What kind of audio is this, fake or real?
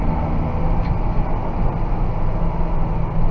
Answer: real